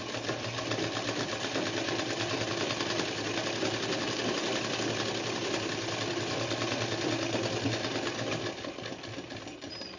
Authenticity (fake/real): real